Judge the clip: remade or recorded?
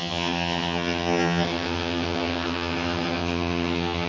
remade